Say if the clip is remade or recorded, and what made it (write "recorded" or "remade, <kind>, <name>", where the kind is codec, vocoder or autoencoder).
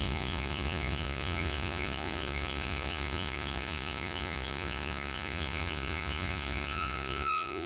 remade, vocoder, Vocos